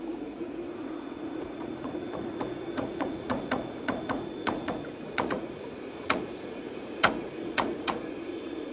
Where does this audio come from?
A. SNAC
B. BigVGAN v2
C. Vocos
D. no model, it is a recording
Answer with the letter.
C